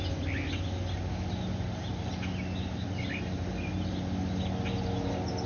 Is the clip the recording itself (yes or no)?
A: yes